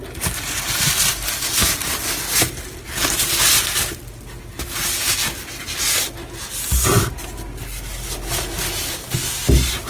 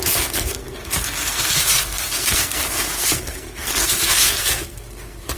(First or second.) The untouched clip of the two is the first